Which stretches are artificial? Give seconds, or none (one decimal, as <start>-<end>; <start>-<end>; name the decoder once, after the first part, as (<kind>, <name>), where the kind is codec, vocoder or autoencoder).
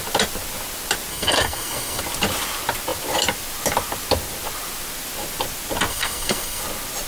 1.1-2.0 (codec, SNAC); 5.9-6.6